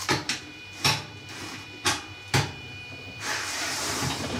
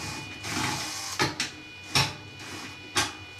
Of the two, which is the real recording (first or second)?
second